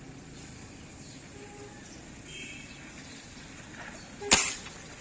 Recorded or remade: recorded